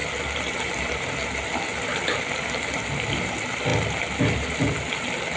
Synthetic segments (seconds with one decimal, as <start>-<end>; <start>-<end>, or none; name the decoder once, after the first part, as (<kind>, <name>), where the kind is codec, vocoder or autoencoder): none